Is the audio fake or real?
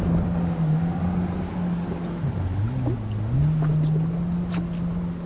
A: real